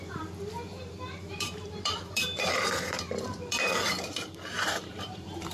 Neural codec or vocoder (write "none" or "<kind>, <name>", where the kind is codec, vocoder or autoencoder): vocoder, BigVGAN v2